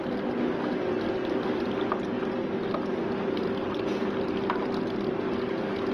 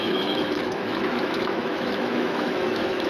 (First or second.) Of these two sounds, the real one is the first